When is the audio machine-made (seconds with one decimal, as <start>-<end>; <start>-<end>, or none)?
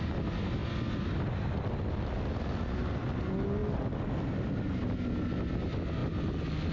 none